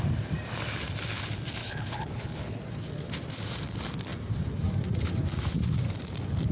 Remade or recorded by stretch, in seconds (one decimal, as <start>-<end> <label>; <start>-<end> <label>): 0.0-1.6 recorded; 1.6-2.6 remade; 2.6-6.5 recorded